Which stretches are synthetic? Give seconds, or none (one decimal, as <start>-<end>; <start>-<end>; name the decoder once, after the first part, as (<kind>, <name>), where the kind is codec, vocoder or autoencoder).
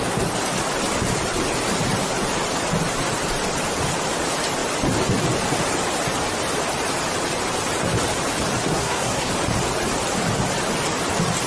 8.6-9.3 (codec, SNAC)